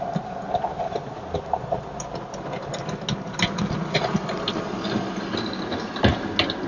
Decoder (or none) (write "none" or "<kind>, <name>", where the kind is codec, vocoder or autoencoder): none